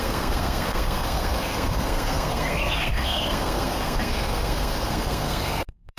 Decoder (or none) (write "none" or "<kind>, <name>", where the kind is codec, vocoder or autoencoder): codec, SNAC